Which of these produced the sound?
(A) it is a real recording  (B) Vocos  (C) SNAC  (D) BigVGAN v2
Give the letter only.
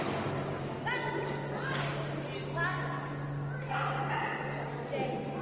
A